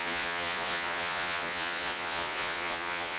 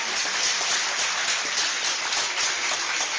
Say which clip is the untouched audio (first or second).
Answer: second